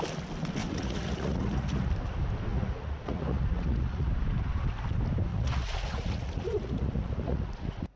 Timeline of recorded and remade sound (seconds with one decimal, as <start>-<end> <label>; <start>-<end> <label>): 0.0-0.6 recorded; 0.6-1.9 remade; 1.9-2.5 recorded; 2.5-4.1 remade; 4.1-5.3 recorded; 5.3-8.0 remade